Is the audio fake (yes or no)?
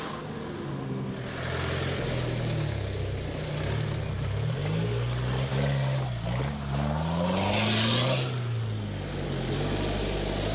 no